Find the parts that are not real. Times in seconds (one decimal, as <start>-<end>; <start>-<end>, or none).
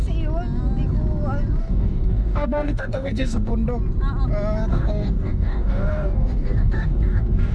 1.6-3.5; 4.7-7.5